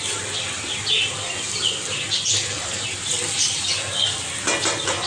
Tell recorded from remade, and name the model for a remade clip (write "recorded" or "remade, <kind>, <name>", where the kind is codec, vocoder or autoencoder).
recorded